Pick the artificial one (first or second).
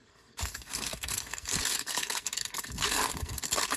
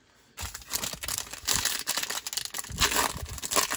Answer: first